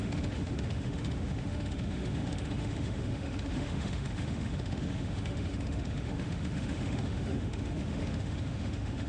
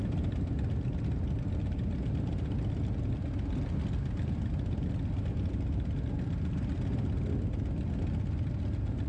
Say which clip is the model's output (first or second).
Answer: first